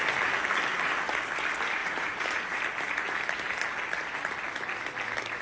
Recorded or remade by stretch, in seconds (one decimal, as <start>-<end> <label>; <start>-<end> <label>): 0.0-1.8 recorded; 1.8-2.6 remade; 2.6-5.4 recorded